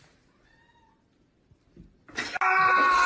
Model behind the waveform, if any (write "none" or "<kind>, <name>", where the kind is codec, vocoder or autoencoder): none